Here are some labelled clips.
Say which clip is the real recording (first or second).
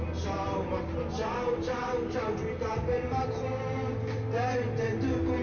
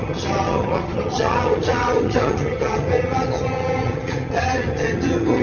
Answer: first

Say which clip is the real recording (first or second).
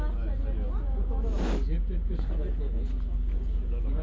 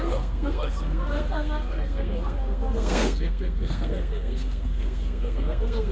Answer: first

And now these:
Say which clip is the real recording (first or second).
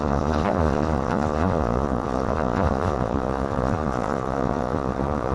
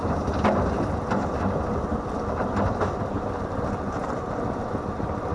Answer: second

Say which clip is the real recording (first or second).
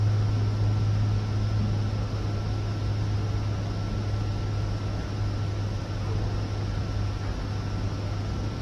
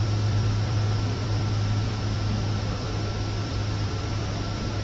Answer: first